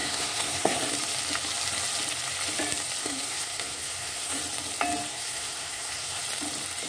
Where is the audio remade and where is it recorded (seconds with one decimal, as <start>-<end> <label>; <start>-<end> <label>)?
0.0-0.8 remade; 0.8-3.0 recorded; 3.0-4.4 remade; 4.4-5.1 recorded; 5.1-6.2 remade; 6.2-6.9 recorded